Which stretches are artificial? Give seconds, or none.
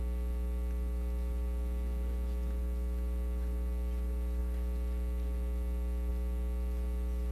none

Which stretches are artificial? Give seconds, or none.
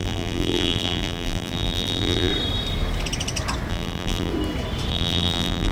0.0-2.3 (vocoder, BigVGAN v2); 3.7-4.3; 4.9-5.7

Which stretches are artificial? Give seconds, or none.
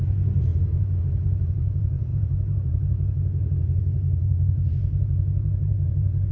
0.0-6.3 (vocoder, BigVGAN v2)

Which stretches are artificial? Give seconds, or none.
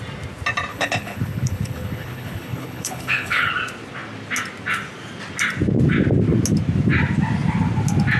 0.7-3.5 (codec, HILCodec)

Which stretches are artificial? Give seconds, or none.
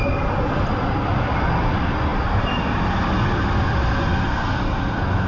2.1-2.9 (vocoder, BigVGAN v2)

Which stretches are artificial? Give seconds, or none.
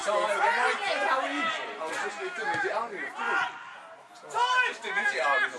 none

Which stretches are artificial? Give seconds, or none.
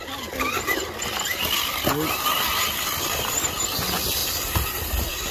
none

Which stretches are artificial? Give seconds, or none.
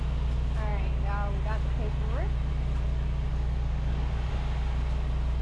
3.3-4.3 (codec, DAC)